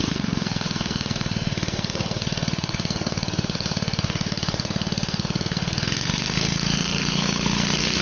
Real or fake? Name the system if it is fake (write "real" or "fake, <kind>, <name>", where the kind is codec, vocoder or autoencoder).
fake, codec, SNAC